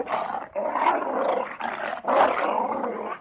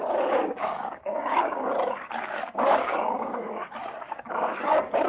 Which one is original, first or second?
first